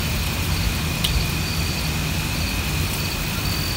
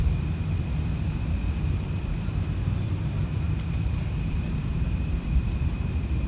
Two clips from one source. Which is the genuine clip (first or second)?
first